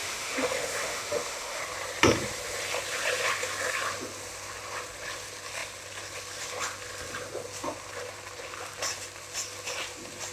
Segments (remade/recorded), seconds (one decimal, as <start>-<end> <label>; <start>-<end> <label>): 0.0-1.6 remade; 1.6-10.3 recorded